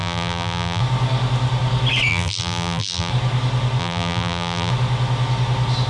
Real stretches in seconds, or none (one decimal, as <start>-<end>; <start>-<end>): 0.8-2.1; 3.1-3.8; 4.7-5.9